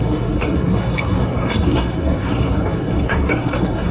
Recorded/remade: remade